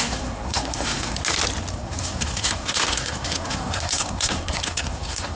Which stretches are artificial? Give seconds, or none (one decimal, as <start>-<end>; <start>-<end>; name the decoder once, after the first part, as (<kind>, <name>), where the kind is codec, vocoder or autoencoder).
0.0-1.2 (codec, SNAC); 1.7-5.4